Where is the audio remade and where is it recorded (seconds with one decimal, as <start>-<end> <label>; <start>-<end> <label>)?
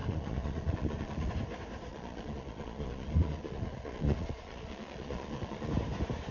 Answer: 0.0-1.3 remade; 1.3-1.9 recorded; 1.9-5.7 remade; 5.7-6.3 recorded